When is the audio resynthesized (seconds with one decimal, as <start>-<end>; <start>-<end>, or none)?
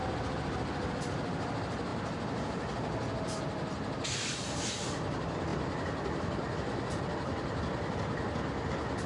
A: none